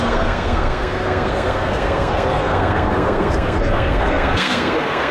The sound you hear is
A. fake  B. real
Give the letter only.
A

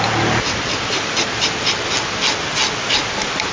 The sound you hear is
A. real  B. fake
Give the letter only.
A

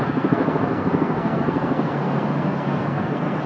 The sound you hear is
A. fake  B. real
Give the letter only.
A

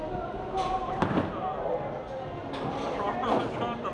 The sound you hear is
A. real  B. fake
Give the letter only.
A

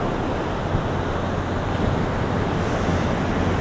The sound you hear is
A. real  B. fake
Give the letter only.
A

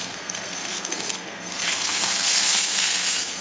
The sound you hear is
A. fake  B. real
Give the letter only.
A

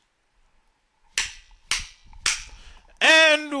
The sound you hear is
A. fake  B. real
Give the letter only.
B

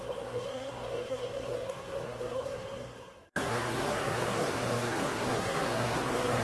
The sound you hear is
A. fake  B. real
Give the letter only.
A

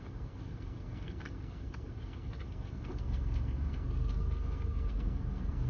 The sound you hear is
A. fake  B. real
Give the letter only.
A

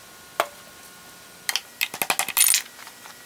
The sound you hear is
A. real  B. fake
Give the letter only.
A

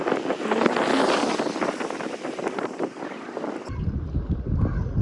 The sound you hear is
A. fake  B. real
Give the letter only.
B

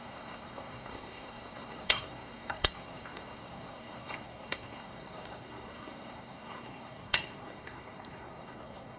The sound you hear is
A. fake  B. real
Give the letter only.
A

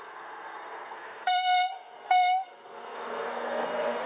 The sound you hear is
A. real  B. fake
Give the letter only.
B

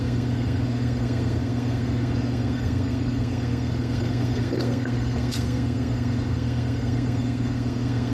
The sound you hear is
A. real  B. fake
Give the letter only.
B